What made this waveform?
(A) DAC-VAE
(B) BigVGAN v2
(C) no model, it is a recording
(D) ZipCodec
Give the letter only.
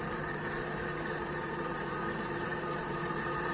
B